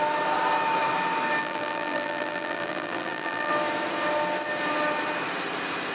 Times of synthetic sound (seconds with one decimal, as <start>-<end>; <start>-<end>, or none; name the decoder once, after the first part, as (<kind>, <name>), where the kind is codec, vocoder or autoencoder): 1.4-3.5 (vocoder, BigVGAN v2)